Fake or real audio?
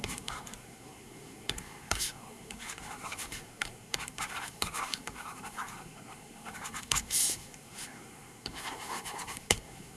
fake